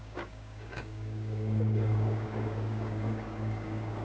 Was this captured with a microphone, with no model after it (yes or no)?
no